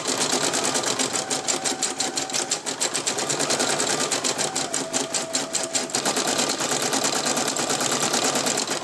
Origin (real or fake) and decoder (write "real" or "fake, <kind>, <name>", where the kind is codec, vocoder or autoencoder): real